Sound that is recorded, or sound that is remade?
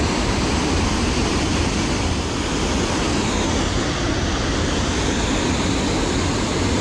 recorded